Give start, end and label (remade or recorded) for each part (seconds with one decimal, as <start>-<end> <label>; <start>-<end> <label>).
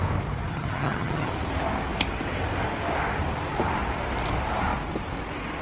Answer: 0.0-0.5 recorded; 0.5-1.3 remade; 1.3-5.6 recorded